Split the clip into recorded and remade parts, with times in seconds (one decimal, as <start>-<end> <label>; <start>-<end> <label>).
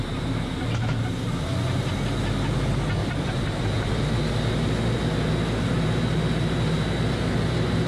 0.0-3.0 recorded; 3.0-4.0 remade; 4.0-7.9 recorded